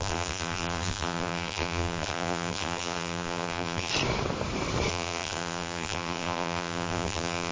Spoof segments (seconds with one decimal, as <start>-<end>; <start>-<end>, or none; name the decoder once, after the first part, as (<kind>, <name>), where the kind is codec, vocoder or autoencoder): 0.0-3.9 (vocoder, BigVGAN v2); 4.9-7.5